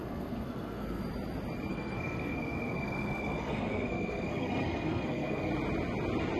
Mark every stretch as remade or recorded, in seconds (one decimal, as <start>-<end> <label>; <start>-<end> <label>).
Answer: 0.0-1.0 remade; 1.0-1.7 recorded; 1.7-5.5 remade; 5.5-6.4 recorded